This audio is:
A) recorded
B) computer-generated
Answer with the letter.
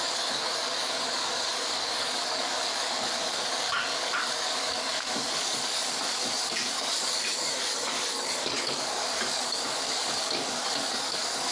B